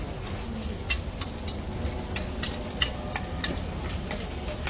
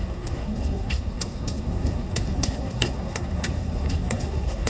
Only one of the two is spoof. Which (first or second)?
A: second